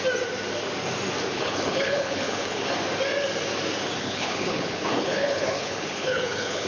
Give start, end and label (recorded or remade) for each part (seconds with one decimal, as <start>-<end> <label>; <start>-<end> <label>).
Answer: 0.0-1.3 recorded; 1.3-2.6 remade; 2.6-4.0 recorded; 4.0-6.7 remade